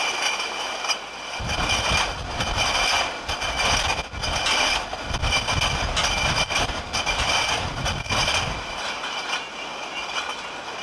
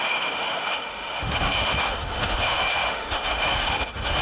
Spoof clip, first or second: second